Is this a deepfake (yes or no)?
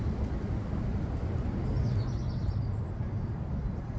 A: no